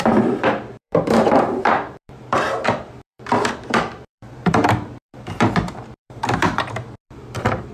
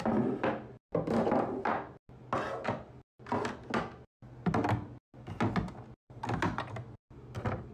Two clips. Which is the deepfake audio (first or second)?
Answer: first